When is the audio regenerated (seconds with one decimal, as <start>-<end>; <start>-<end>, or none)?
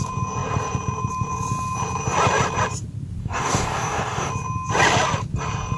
3.2-4.3